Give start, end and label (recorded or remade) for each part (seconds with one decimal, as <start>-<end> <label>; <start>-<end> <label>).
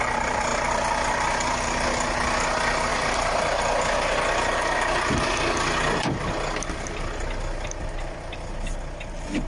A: 0.0-9.5 recorded